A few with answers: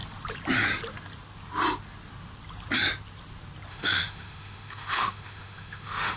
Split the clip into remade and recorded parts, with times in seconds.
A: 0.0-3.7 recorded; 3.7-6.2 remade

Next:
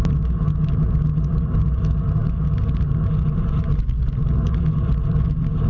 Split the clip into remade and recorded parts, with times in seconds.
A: 0.0-5.7 recorded

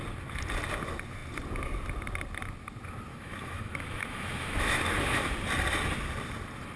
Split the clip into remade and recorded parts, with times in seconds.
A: 0.0-3.1 recorded; 3.1-5.2 remade; 5.2-6.8 recorded

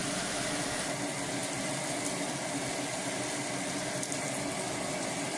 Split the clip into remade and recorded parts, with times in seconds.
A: 0.0-5.4 recorded